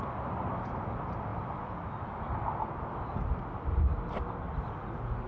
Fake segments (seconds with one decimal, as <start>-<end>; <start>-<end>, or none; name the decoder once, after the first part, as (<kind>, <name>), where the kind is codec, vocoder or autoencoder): 0.0-1.3 (vocoder, BigVGAN v2); 3.4-3.9; 4.6-5.3